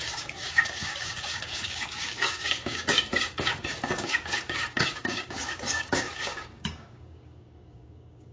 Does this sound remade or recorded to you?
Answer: remade